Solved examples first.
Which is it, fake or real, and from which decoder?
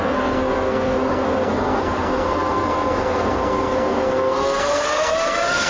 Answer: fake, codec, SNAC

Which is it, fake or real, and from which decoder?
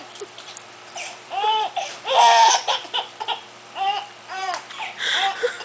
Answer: fake, vocoder, BigVGAN v2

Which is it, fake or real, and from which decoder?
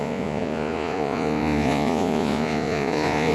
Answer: fake, vocoder, Vocos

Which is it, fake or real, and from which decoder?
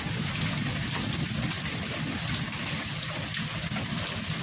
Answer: real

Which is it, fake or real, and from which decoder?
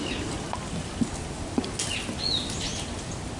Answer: real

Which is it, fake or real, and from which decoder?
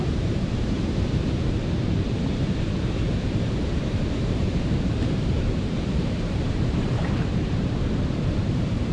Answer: fake, vocoder, BigVGAN v2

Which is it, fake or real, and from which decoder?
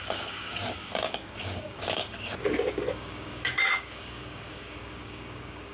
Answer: fake, codec, DAC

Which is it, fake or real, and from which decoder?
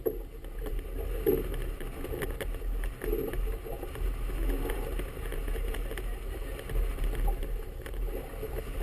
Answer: real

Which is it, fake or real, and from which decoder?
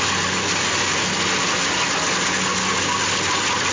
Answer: real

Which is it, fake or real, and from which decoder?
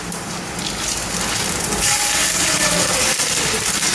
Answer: real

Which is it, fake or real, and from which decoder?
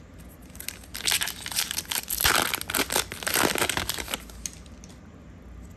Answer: real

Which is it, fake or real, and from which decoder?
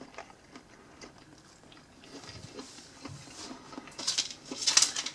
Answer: real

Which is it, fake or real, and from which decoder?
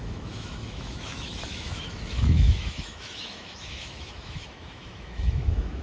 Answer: fake, autoencoder, DAC-VAE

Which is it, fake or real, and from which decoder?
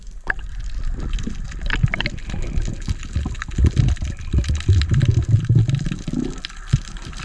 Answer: real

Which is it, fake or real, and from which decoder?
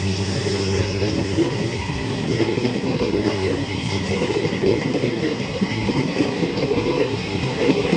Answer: fake, codec, SNAC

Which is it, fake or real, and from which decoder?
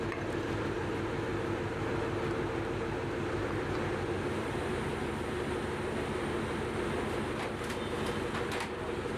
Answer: real